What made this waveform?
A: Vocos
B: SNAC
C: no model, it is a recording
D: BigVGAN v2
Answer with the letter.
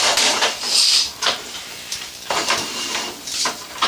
D